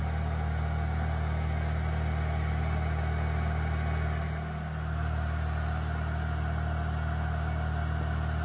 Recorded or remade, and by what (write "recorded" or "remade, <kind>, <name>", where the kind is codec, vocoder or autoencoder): recorded